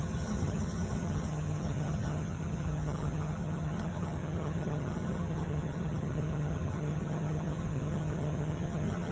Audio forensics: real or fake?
fake